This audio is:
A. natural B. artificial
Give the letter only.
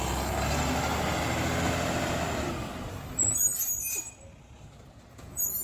A